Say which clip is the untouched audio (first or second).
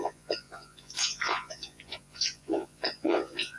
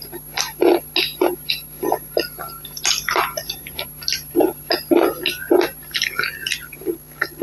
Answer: second